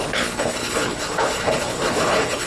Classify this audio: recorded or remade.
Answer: remade